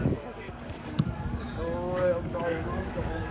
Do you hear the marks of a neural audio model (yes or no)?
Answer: yes